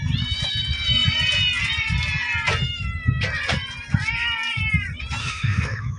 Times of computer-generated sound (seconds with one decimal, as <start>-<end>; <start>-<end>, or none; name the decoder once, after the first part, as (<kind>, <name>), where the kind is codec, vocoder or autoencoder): 5.2-6.0 (autoencoder, DAC-VAE)